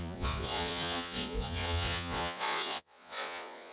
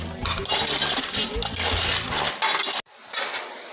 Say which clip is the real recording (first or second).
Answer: second